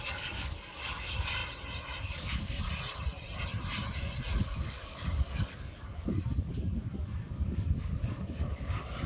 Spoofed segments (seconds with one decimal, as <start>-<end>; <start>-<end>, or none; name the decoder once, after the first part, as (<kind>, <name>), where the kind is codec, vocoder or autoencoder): 0.0-1.4 (codec, DAC); 2.0-2.7; 4.3-9.1